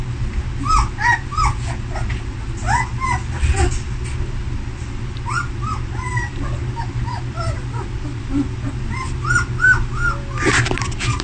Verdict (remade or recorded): recorded